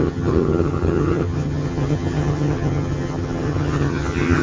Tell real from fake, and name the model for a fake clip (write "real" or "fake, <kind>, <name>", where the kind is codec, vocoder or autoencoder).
fake, vocoder, HiFi-GAN